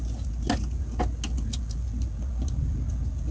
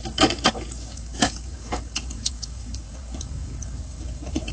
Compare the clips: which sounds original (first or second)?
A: first